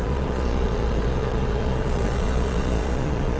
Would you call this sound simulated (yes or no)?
yes